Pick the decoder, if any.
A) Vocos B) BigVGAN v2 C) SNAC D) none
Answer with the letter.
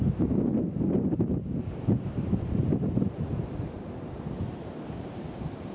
D